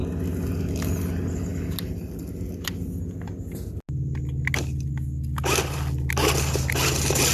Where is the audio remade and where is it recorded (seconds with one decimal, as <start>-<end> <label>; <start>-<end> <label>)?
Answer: 0.0-7.3 recorded